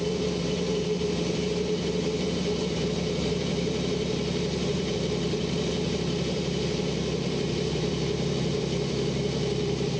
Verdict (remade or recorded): remade